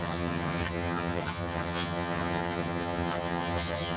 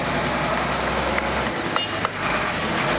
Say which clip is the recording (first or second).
second